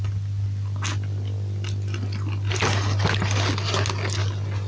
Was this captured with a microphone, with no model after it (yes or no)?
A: yes